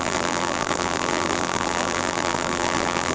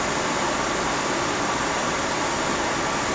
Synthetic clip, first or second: first